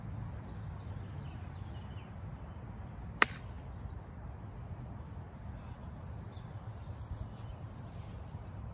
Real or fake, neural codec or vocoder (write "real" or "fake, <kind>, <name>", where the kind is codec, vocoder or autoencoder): real